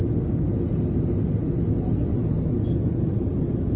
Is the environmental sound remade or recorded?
recorded